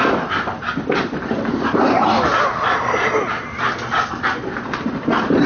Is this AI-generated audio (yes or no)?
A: no